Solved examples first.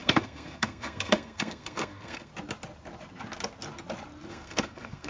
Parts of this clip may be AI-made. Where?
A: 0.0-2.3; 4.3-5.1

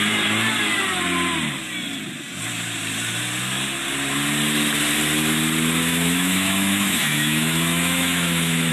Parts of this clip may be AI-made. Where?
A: 5.9-8.7